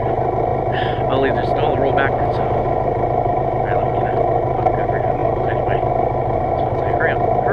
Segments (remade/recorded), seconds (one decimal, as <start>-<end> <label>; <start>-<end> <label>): 0.0-7.5 recorded